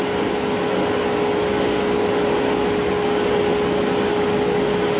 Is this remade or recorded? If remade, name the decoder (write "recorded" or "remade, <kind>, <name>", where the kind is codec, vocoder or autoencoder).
recorded